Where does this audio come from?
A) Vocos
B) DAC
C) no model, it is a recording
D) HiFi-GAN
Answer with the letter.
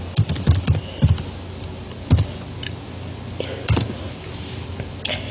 C